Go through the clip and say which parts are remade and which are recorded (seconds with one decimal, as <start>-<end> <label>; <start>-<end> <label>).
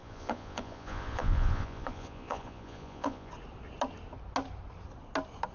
0.0-3.3 remade; 3.3-5.5 recorded